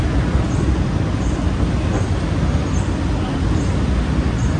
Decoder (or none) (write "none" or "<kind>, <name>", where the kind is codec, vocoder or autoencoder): none